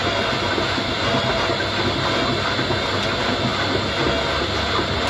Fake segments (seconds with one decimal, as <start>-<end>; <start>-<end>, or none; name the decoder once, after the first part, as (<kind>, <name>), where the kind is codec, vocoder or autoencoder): none